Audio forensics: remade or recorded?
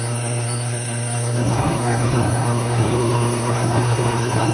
remade